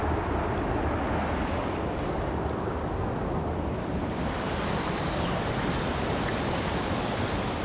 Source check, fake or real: real